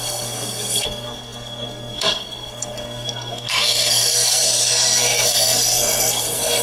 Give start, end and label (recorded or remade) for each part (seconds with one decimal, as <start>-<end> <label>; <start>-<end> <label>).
0.0-6.6 remade